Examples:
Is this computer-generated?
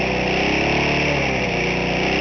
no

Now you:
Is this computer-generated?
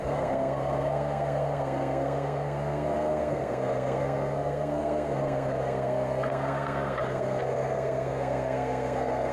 yes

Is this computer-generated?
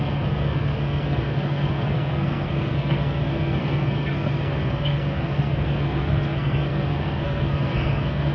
yes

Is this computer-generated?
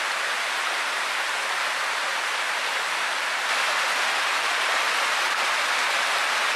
no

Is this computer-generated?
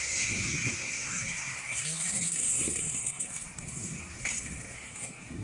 yes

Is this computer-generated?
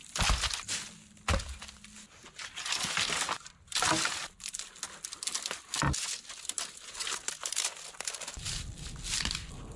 no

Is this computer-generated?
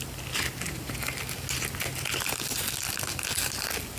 no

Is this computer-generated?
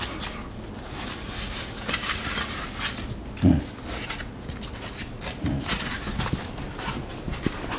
no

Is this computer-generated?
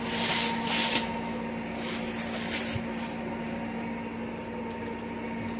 no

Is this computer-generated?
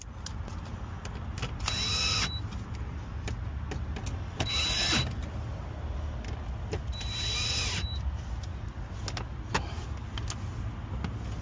no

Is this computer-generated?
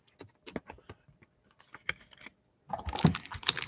no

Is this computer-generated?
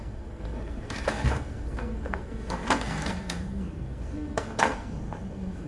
yes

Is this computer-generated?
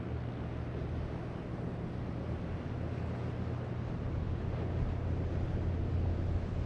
no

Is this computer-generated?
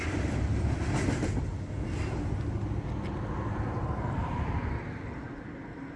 no